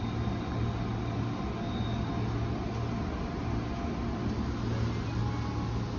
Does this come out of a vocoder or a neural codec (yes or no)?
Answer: no